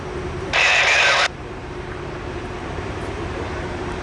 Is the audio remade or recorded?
remade